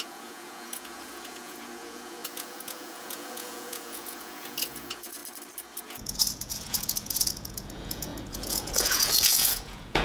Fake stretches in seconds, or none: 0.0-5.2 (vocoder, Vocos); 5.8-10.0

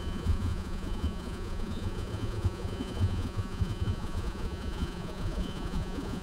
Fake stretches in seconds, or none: 0.0-6.2 (vocoder, Vocos)

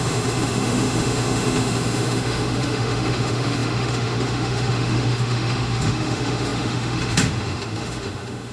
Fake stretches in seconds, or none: 0.0-8.5 (autoencoder, DAC-VAE)

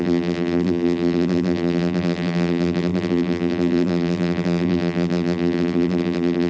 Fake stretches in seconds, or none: 0.0-6.5 (vocoder, BigVGAN v2)